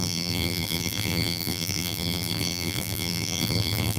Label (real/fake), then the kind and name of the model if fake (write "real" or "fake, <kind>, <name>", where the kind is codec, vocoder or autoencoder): fake, vocoder, BigVGAN v2